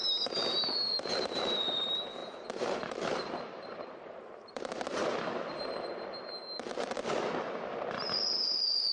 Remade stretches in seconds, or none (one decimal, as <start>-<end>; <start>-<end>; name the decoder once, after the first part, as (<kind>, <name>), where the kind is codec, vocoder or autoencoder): 0.0-5.0 (vocoder, BigVGAN v2); 5.8-7.0; 8.3-8.9